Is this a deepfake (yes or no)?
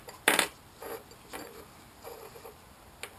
no